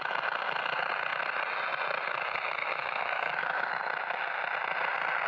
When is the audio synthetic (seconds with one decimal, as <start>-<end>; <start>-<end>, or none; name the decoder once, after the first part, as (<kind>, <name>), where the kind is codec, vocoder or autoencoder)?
2.6-3.7 (autoencoder, DAC-VAE)